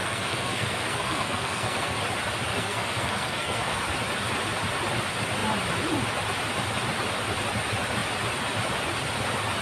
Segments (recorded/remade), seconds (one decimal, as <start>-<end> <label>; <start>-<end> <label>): 0.0-2.0 remade; 2.0-2.5 recorded; 2.5-3.8 remade; 3.8-9.6 recorded